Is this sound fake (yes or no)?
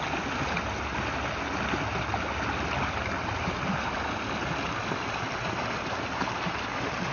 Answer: no